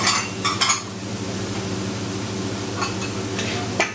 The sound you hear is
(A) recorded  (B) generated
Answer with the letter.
A